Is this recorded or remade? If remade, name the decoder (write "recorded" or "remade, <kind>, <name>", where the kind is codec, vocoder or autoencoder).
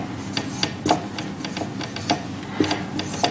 recorded